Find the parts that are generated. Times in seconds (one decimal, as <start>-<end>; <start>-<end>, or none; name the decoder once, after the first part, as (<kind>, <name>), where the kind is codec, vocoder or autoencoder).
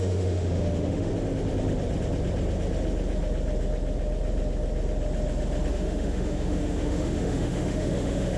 0.0-1.1 (autoencoder, DAC-VAE); 5.7-8.4